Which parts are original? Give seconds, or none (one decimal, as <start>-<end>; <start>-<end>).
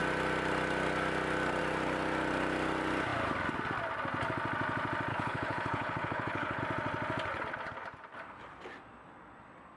0.0-5.1; 6.6-9.8